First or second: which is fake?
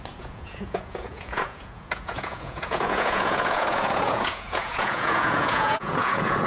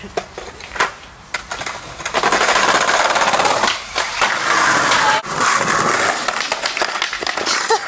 first